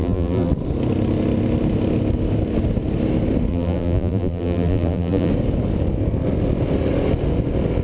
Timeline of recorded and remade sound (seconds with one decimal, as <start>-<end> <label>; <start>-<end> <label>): 0.0-0.5 remade; 0.5-3.5 recorded; 3.5-5.3 remade; 5.3-7.8 recorded